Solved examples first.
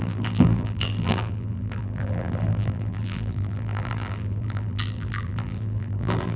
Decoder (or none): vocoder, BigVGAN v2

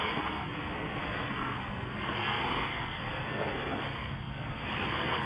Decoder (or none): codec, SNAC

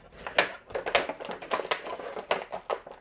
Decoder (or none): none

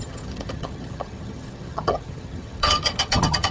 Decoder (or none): vocoder, HiFi-GAN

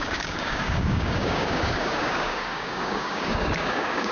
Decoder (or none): codec, DAC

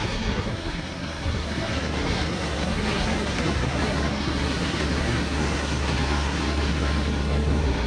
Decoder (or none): codec, SNAC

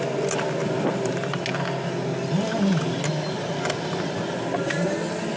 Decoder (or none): none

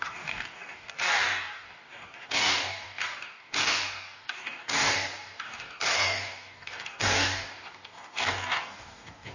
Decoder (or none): codec, DAC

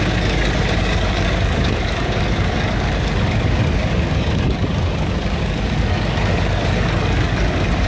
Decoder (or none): codec, DAC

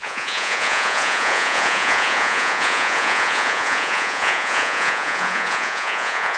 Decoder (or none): vocoder, Vocos